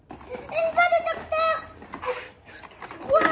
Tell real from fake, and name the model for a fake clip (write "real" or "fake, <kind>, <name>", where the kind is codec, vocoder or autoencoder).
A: real